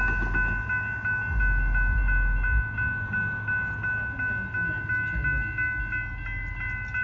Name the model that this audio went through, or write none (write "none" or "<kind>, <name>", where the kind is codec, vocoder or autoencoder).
none